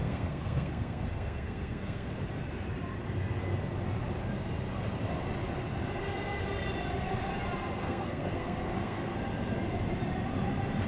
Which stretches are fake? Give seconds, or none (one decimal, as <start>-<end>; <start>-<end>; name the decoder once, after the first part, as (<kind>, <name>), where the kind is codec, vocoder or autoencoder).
0.0-2.1 (codec, SNAC); 7.8-9.2